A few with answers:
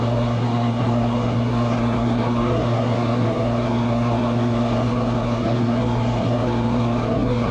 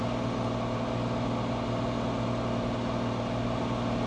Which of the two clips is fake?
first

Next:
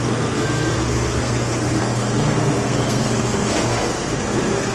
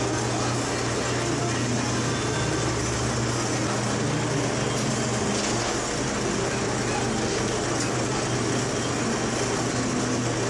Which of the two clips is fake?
first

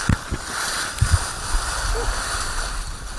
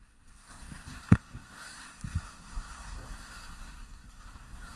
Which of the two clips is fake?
second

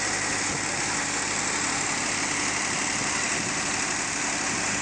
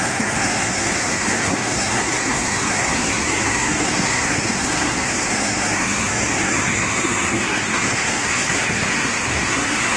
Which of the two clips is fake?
second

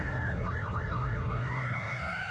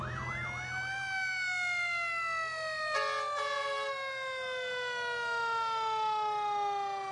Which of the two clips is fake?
first